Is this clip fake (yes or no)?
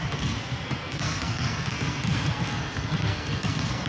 yes